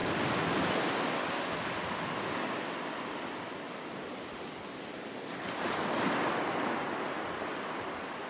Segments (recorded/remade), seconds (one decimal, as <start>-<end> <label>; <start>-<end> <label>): 0.0-8.3 recorded